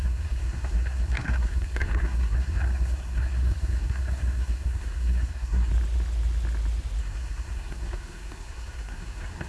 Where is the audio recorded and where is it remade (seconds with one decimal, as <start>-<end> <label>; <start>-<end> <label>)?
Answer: 0.0-5.7 remade; 5.7-7.0 recorded; 7.0-9.5 remade